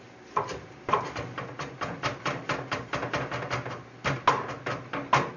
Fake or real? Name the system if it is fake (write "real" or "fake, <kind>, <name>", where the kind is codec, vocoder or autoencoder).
real